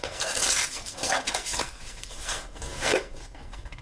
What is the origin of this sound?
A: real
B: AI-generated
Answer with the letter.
B